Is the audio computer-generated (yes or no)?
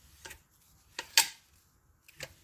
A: no